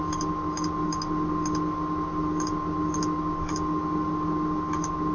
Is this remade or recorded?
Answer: recorded